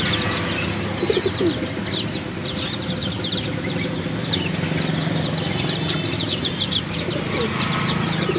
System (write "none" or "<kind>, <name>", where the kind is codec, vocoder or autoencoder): none